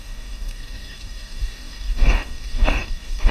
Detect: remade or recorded remade